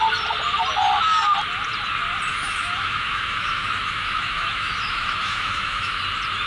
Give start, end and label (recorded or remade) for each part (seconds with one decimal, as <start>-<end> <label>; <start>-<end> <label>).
0.0-2.3 recorded; 2.3-6.0 remade; 6.0-6.5 recorded